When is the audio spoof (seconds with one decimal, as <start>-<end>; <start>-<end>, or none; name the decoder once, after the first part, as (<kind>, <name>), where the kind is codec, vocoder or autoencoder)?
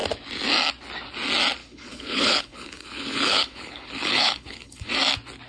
1.6-4.9 (codec, HILCodec)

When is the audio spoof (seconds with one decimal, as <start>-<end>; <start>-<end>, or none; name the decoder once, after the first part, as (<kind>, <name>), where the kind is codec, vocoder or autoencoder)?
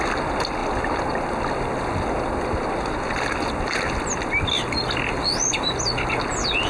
none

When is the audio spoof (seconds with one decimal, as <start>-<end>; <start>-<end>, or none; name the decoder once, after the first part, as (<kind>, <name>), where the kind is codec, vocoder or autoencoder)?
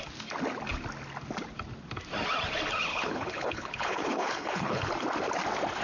2.9-4.9 (codec, HILCodec)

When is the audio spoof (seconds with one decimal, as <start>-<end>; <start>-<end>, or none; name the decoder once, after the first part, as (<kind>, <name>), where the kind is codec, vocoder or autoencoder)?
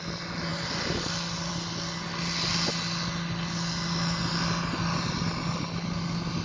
none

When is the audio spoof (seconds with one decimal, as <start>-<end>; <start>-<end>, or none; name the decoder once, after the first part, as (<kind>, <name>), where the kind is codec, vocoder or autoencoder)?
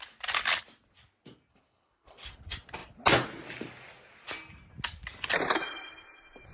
1.5-2.3 (codec, HILCodec)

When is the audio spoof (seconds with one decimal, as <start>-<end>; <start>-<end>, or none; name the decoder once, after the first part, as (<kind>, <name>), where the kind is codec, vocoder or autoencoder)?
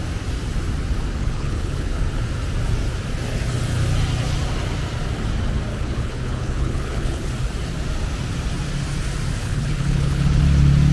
1.2-2.0 (codec, HILCodec); 5.7-7.3; 9.4-10.4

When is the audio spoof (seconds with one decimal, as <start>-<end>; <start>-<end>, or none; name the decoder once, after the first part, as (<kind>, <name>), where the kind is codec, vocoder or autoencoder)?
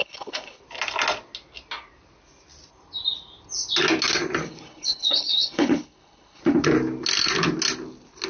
0.0-0.6 (codec, HILCodec); 4.4-6.4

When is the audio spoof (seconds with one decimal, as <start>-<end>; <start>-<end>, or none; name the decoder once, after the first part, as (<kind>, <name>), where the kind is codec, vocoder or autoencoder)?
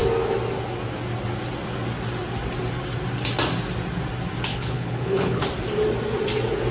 4.5-5.4 (codec, HILCodec)